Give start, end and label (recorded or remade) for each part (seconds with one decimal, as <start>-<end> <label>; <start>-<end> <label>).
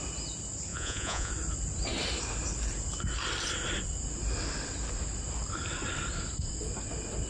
0.0-0.7 recorded; 0.7-1.3 remade; 1.3-7.3 recorded